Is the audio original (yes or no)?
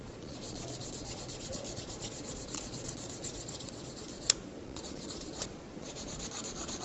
no